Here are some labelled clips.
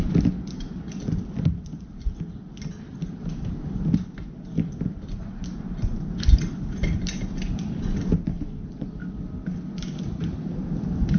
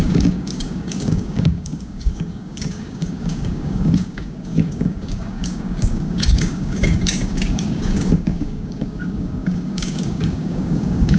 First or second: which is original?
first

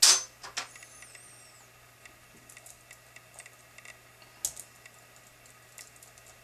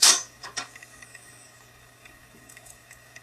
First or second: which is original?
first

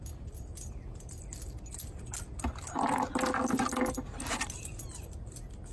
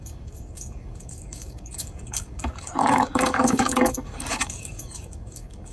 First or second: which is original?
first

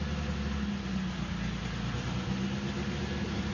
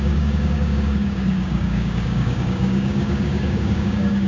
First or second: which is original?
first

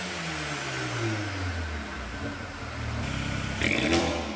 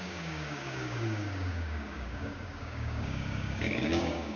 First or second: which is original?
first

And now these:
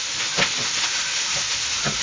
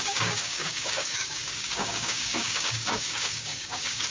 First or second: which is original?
first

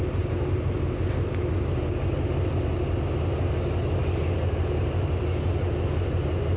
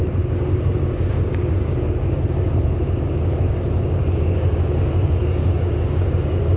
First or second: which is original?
first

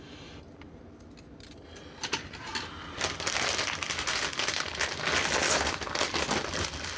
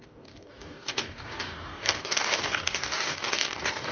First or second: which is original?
first